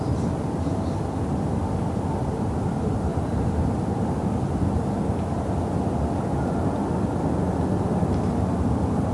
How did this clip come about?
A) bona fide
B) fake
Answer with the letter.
A